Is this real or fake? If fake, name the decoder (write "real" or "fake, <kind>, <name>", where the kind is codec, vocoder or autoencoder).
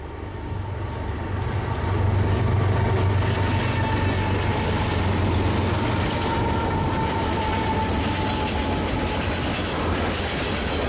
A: real